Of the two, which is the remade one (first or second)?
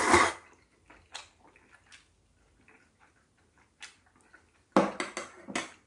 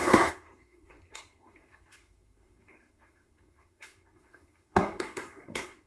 second